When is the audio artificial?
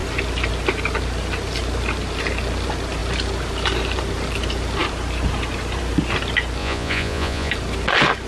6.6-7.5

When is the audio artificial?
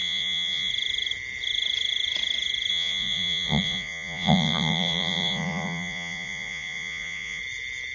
0.0-0.7; 2.7-7.4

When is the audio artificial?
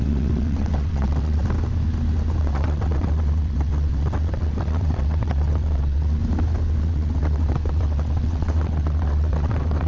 0.0-1.4; 2.4-6.2; 6.8-9.9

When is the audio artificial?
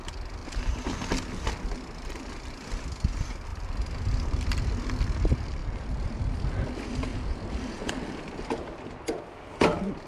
5.6-6.2; 7.1-7.9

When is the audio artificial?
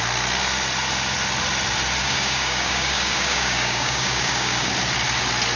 2.0-4.7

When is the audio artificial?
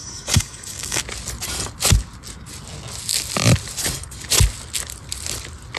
0.0-1.0